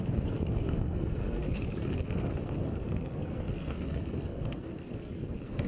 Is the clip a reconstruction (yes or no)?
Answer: yes